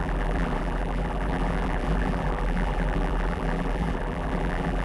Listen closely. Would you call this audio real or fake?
fake